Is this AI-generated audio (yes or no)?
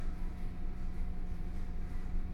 no